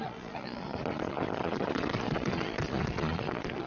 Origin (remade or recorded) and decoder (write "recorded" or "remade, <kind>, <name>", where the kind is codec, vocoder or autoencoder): remade, vocoder, Vocos